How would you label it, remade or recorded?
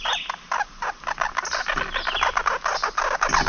recorded